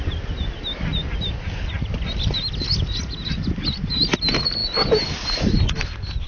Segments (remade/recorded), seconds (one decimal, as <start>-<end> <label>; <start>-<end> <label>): 0.0-6.3 recorded